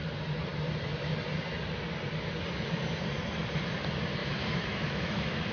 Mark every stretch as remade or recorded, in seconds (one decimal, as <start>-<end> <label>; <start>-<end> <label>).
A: 0.0-4.2 recorded; 4.2-5.5 remade